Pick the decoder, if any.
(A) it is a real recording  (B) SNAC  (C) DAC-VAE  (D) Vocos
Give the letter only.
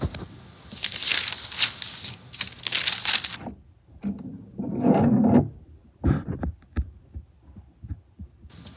A